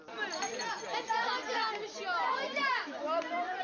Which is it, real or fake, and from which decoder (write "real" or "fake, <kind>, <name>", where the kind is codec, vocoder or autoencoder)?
real